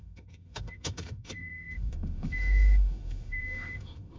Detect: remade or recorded remade